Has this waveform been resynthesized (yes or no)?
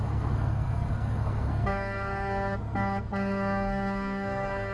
yes